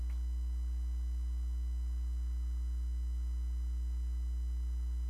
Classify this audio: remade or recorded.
recorded